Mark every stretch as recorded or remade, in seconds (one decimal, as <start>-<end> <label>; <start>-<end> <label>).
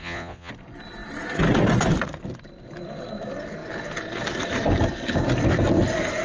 0.0-0.5 remade; 0.5-6.2 recorded